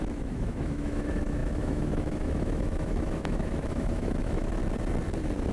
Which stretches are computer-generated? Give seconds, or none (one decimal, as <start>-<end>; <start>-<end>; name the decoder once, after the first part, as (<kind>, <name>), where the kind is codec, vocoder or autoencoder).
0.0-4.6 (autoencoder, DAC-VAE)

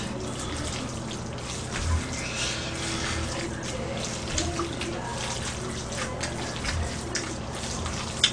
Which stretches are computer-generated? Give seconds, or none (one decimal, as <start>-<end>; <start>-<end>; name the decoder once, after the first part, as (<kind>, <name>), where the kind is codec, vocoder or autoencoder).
none

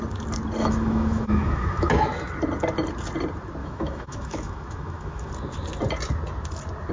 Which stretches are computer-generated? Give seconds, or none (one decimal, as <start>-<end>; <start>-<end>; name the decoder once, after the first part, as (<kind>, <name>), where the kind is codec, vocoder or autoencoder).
0.6-1.9 (autoencoder, DAC-VAE); 3.6-5.3

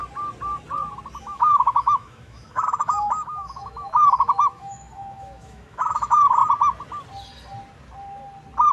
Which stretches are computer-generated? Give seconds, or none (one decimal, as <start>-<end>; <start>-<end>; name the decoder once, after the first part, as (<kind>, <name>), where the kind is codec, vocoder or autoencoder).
1.2-6.4 (autoencoder, DAC-VAE)

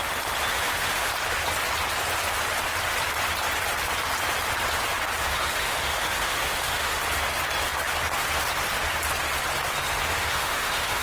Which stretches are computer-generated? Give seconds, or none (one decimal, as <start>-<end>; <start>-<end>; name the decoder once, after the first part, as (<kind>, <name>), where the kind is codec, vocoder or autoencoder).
0.5-1.1 (autoencoder, DAC-VAE); 5.3-7.0; 10.1-11.0

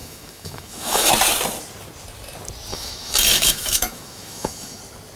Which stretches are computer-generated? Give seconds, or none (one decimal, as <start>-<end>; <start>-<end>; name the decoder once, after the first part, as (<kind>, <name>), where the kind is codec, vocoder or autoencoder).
0.0-1.1 (autoencoder, DAC-VAE); 2.7-4.8

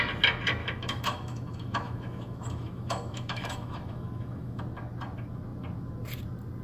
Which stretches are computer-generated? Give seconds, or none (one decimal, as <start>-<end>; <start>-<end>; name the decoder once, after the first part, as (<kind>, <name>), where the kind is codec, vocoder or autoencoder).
0.6-4.6 (autoencoder, DAC-VAE)

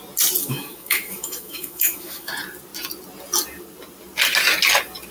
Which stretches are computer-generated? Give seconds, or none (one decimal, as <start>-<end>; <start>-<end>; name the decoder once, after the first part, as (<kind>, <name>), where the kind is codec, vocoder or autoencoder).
0.4-2.3 (autoencoder, DAC-VAE)